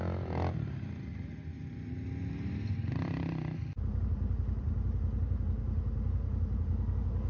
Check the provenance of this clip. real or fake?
real